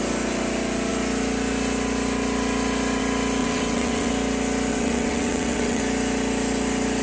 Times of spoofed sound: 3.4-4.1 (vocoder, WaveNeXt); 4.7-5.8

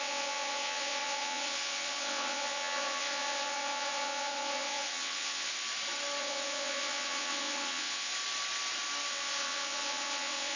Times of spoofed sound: 0.0-5.5 (vocoder, WaveNeXt); 6.2-8.1; 9.1-10.6

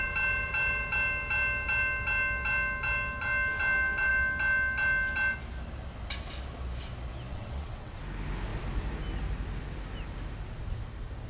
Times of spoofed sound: 7.3-8.0 (vocoder, WaveNeXt)